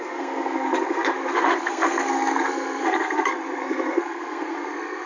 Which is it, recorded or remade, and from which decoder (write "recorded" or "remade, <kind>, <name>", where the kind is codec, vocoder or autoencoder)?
remade, codec, SNAC